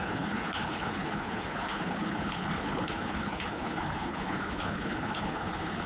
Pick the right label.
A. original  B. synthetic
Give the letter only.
B